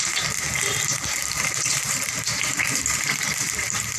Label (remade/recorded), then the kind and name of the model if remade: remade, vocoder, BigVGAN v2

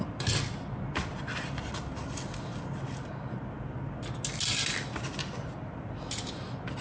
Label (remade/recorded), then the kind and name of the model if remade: recorded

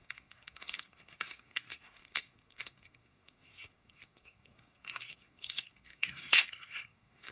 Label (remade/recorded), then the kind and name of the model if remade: remade, codec, SNAC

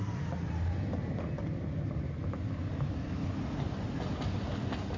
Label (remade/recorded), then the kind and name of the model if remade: recorded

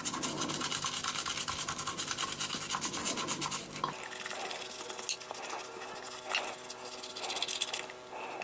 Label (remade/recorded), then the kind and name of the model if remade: recorded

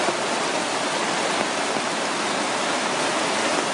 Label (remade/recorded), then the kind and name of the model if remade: recorded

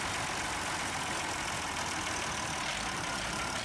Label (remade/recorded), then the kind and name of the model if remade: recorded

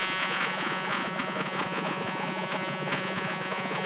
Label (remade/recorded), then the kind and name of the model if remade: remade, vocoder, Vocos